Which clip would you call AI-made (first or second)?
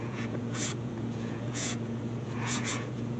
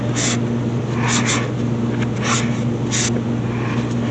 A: first